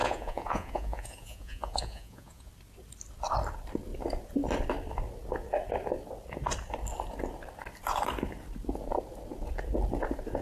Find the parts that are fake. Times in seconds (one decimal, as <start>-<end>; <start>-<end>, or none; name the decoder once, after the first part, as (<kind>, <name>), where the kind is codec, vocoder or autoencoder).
0.0-2.5 (vocoder, Vocos)